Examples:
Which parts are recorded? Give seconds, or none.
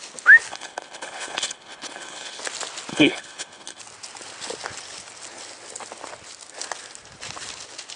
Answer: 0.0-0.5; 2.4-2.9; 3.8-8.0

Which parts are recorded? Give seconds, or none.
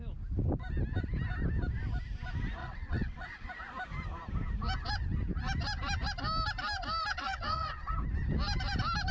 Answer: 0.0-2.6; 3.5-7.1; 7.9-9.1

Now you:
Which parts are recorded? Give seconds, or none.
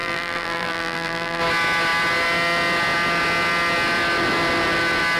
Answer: 1.4-5.2